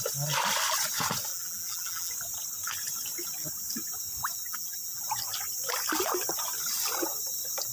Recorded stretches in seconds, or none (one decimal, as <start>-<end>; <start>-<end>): 0.0-1.3; 2.1-4.4; 5.0-7.7